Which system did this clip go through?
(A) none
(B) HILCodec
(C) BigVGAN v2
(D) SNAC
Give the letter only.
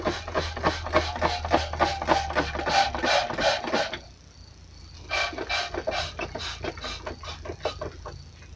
A